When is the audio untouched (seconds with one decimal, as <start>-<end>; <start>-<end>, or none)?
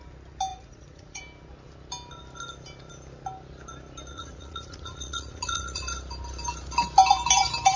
0.0-0.5; 1.2-4.1; 5.8-7.8